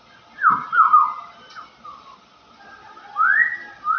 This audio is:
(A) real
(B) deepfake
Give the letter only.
A